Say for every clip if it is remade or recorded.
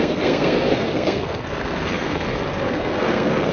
remade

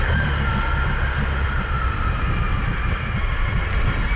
recorded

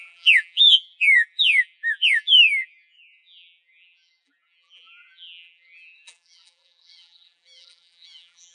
remade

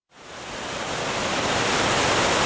recorded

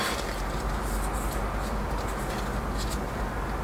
recorded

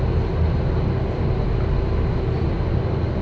recorded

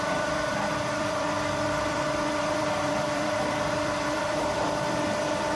remade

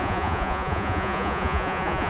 remade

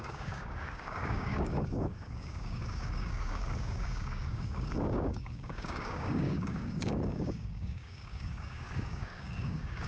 remade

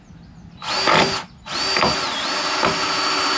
recorded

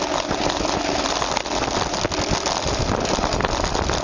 recorded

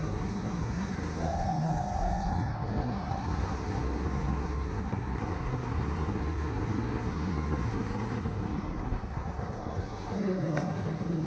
remade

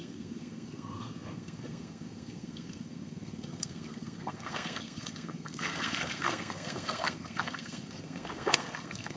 remade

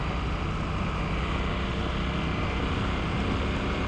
recorded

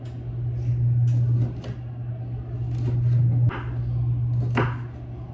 recorded